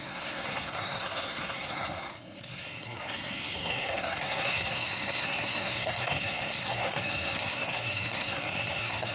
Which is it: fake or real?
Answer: fake